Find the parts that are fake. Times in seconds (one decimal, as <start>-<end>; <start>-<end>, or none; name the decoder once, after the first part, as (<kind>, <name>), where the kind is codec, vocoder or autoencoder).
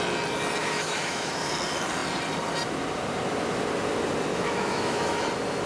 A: 0.6-1.3 (autoencoder, DAC-VAE); 4.3-5.2